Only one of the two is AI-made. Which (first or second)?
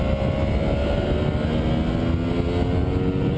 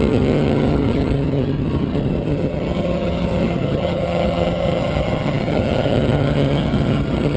second